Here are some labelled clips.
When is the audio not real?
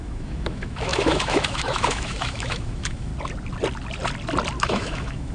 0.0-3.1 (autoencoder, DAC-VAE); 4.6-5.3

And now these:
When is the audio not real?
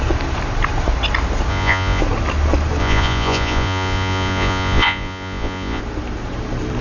1.5-2.0 (vocoder, Vocos); 2.8-5.8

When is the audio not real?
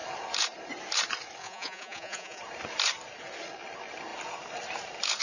1.4-2.4 (vocoder, Vocos)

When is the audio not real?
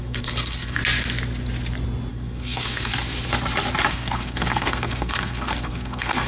0.0-0.8 (codec, SNAC); 2.1-2.9; 3.9-6.3